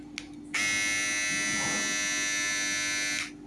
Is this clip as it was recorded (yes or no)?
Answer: yes